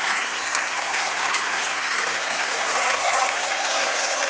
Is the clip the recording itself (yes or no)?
no